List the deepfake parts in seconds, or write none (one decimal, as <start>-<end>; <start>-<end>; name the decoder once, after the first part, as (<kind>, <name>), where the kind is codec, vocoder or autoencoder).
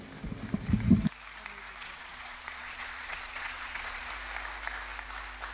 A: 1.8-4.1 (vocoder, Vocos)